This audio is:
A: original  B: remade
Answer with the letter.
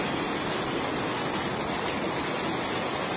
A